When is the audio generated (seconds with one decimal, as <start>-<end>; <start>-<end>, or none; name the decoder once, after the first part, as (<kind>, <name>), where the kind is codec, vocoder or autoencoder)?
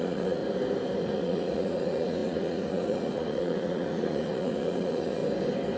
0.0-0.4 (vocoder, Vocos); 1.0-5.2